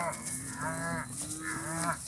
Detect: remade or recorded recorded